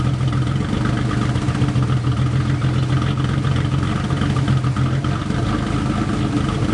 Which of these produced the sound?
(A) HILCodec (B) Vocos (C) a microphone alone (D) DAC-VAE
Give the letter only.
C